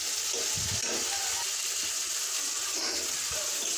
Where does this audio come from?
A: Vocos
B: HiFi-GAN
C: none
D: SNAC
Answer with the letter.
C